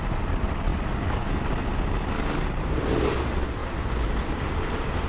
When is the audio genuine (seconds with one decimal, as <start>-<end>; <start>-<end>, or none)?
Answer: 0.0-5.1